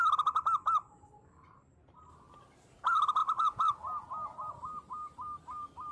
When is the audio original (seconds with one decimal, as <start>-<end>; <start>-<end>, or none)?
0.0-5.9